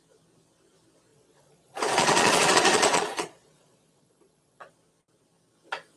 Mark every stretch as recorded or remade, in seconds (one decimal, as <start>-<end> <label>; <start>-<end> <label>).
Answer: 0.0-1.1 recorded; 1.1-4.7 remade; 4.7-6.0 recorded